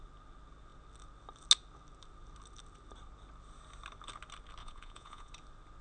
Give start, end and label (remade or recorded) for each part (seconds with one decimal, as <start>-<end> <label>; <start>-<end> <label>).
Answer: 0.0-4.6 recorded; 4.6-5.3 remade; 5.3-5.8 recorded